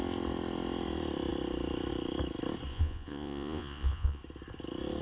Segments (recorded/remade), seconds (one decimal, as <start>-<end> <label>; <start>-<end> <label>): 0.0-2.7 recorded; 2.7-4.2 remade; 4.2-5.0 recorded